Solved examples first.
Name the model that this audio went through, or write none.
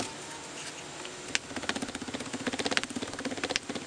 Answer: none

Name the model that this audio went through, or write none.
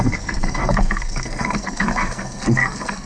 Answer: codec, SNAC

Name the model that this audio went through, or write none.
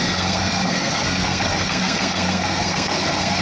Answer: codec, SNAC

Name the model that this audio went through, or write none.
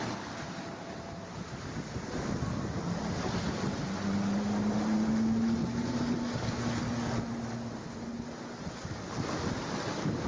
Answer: none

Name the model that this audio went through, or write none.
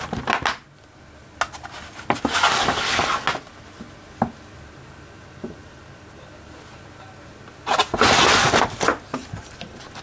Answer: none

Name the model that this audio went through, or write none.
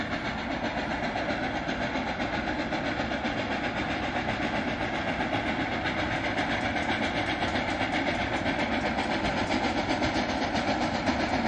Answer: none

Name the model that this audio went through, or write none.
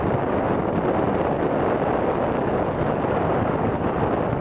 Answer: none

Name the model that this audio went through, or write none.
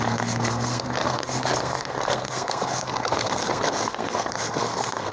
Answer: codec, SNAC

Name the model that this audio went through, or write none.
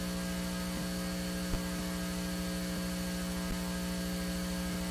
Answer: none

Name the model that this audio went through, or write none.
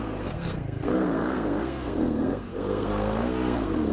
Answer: codec, SNAC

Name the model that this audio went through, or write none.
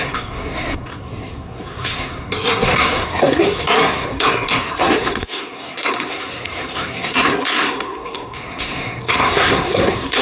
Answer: codec, SNAC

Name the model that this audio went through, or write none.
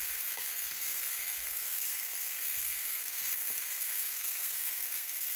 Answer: codec, SNAC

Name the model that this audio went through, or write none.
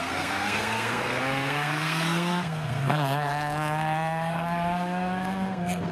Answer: codec, SNAC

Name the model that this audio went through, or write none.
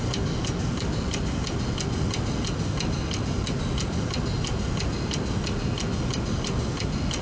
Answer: none